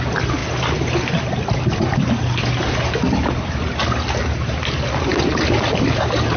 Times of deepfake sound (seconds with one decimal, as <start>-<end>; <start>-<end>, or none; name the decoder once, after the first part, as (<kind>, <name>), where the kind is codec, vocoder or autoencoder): none